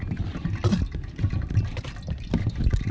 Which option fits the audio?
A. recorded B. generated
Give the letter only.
A